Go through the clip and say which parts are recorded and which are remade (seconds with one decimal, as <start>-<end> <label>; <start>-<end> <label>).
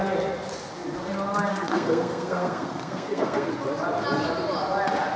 0.0-1.5 recorded; 1.5-3.5 remade; 3.5-5.2 recorded